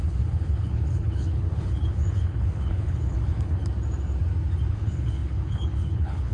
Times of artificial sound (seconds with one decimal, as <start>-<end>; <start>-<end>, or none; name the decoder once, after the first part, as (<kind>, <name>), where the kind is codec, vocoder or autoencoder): 0.0-3.6 (codec, HILCodec); 4.7-6.3